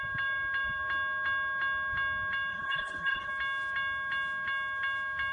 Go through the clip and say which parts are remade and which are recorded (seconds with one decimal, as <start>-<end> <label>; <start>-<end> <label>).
0.0-2.5 recorded; 2.5-3.3 remade; 3.3-5.3 recorded